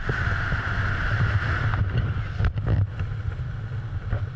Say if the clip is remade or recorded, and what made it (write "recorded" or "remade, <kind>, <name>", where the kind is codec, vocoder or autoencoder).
recorded